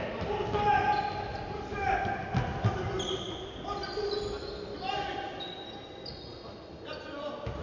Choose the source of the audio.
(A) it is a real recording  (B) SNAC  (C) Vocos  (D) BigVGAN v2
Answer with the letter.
A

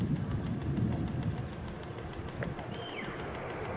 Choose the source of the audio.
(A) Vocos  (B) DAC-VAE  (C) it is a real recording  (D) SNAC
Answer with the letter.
C